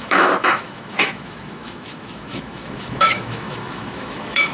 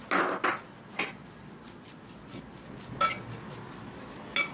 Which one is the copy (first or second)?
first